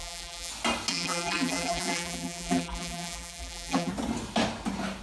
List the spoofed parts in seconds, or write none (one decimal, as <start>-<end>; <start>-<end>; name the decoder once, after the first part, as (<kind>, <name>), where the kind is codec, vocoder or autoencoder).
0.0-0.5 (vocoder, BigVGAN v2); 0.9-3.9

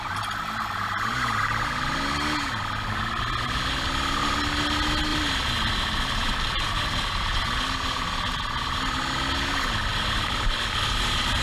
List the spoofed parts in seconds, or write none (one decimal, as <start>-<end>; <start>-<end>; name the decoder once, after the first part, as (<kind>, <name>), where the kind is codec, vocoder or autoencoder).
5.1-6.1 (vocoder, BigVGAN v2)

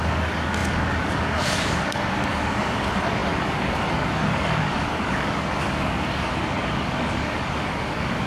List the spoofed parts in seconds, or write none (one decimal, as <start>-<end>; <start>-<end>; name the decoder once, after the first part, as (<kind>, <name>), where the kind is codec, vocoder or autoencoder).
0.0-8.3 (codec, DAC)

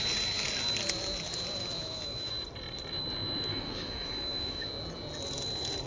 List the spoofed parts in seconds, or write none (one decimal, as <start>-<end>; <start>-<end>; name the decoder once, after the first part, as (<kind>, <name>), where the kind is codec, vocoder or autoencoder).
1.6-2.3 (autoencoder, DAC-VAE); 3.5-4.7

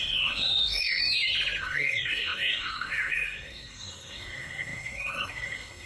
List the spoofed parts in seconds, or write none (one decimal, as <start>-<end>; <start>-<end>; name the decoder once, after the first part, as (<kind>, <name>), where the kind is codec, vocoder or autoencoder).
0.0-1.0 (codec, SNAC); 1.6-5.9

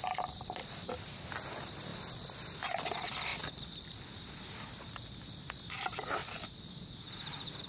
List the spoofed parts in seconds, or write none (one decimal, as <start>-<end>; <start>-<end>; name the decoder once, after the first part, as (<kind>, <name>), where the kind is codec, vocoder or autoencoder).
0.0-1.9 (vocoder, BigVGAN v2); 2.6-6.2; 7.1-7.7

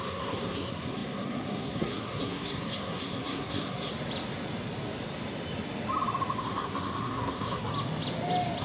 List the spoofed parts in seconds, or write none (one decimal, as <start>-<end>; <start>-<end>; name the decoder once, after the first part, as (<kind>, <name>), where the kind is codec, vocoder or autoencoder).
0.0-3.9 (codec, SNAC); 6.4-7.7